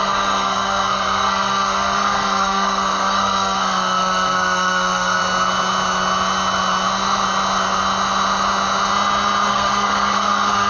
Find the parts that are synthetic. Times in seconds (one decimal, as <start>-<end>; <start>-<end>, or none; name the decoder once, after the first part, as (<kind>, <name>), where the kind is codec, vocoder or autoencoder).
0.0-5.2 (codec, SNAC); 9.5-10.7